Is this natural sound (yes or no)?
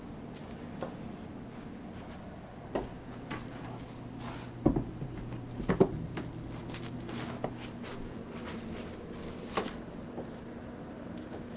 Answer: yes